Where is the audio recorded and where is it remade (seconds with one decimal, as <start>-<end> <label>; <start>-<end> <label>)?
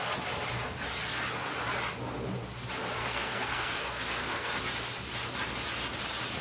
0.0-3.0 recorded; 3.0-4.5 remade; 4.5-6.4 recorded